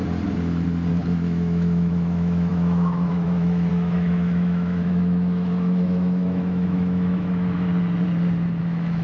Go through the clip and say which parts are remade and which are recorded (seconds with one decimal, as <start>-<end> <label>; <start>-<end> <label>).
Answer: 0.0-0.9 recorded; 0.9-7.7 remade; 7.7-8.6 recorded; 8.6-9.0 remade